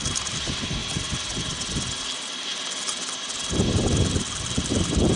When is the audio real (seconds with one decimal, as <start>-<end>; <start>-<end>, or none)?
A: 0.8-2.0; 2.5-4.0